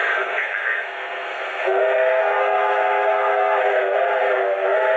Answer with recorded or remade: remade